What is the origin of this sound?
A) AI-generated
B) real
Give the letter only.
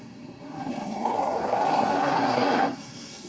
A